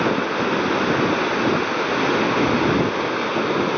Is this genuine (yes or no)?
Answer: yes